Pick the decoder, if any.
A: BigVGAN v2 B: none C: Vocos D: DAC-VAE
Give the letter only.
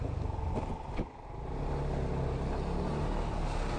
B